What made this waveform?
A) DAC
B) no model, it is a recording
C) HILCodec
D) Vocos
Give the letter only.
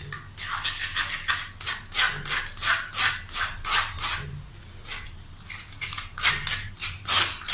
B